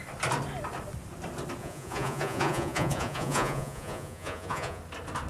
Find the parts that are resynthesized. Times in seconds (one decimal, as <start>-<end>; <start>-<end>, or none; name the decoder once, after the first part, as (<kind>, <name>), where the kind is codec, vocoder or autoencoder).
1.6-4.8 (vocoder, Vocos)